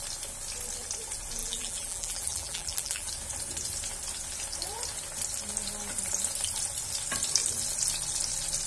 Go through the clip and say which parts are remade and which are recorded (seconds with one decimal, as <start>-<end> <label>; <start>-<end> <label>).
0.0-1.4 recorded; 1.4-3.1 remade; 3.1-8.7 recorded